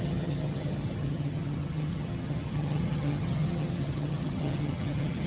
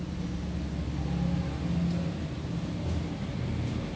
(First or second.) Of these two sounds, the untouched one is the second